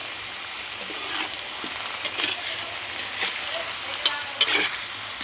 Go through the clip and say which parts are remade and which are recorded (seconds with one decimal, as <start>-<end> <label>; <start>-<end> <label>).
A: 0.0-5.2 recorded